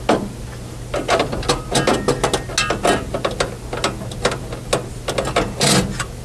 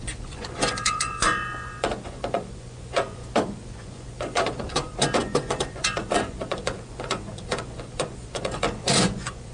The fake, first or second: second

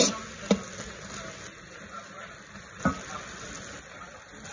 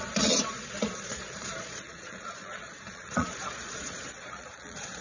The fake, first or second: second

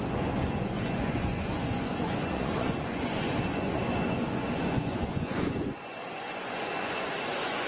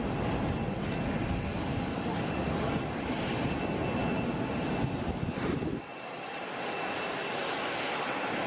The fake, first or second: first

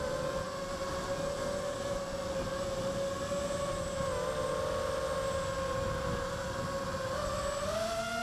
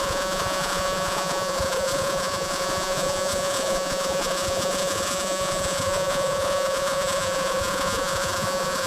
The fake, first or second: second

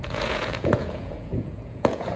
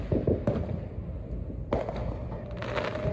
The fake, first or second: first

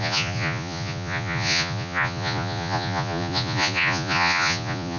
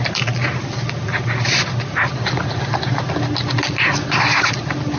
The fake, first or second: first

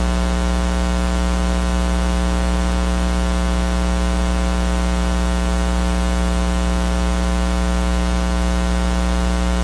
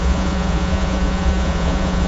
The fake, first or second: second